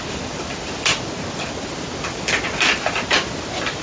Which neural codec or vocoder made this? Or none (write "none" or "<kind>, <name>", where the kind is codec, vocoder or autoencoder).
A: none